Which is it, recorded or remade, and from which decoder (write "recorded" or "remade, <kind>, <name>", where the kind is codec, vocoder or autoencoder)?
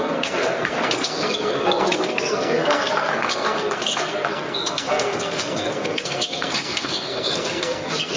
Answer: remade, codec, SNAC